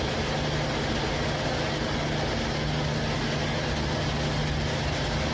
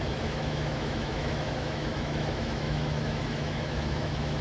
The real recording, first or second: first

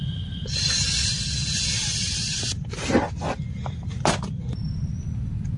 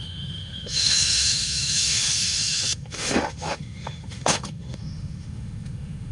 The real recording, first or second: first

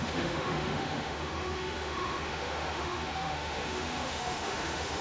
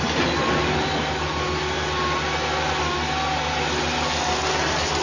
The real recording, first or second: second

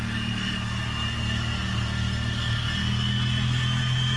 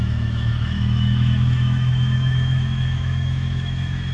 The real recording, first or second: first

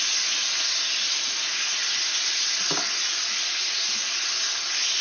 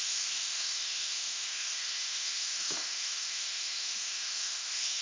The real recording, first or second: first